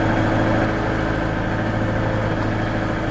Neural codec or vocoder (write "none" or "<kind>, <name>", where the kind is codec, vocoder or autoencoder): none